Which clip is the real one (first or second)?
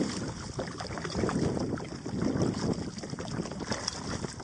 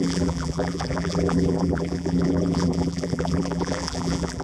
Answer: first